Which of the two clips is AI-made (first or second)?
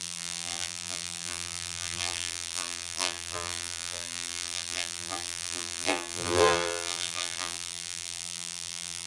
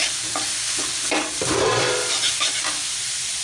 first